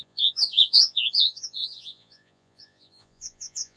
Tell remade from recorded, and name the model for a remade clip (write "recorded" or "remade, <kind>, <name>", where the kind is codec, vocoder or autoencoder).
remade, vocoder, Vocos